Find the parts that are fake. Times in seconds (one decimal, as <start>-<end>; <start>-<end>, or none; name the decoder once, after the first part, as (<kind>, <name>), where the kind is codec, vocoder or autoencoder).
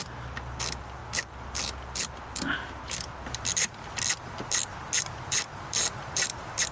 0.0-1.0 (vocoder, BigVGAN v2); 5.0-6.7